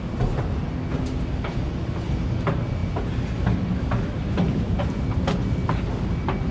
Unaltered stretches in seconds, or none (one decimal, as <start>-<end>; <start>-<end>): 0.0-2.8; 4.8-6.5